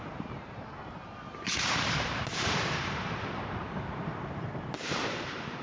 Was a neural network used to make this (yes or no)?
yes